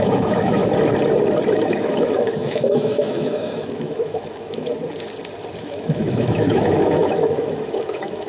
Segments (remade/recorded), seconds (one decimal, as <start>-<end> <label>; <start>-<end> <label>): 0.0-0.6 remade; 0.6-1.5 recorded; 1.5-4.7 remade; 4.7-5.6 recorded; 5.6-8.3 remade